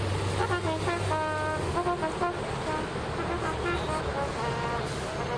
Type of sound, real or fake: real